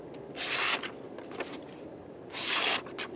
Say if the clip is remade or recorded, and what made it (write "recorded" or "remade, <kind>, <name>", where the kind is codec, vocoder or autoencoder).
recorded